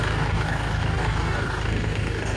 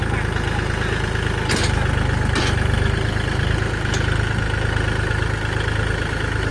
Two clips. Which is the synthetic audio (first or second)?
first